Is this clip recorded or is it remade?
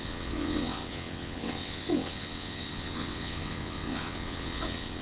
remade